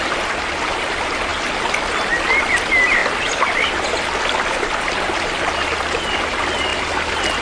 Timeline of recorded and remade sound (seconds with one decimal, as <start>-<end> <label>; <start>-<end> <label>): 0.0-7.4 recorded